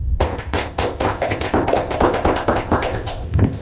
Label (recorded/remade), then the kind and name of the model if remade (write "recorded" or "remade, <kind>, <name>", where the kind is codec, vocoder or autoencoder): remade, codec, ZipCodec